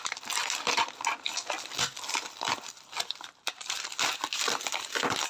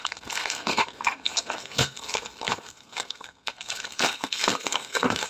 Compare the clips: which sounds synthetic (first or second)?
second